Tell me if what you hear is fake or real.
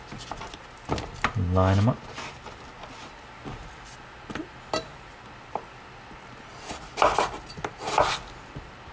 real